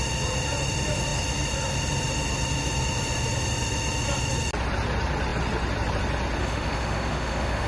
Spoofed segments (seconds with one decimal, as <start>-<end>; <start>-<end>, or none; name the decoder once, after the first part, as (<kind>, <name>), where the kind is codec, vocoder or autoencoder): 6.4-7.7 (autoencoder, DAC-VAE)

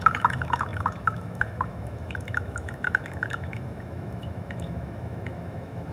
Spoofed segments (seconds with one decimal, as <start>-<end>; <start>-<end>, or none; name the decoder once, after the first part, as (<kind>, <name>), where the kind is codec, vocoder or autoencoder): 0.0-5.9 (autoencoder, DAC-VAE)